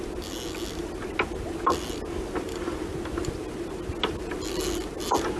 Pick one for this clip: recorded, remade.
recorded